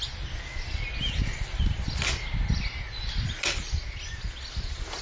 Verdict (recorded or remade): recorded